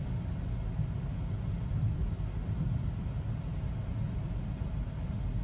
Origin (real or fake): real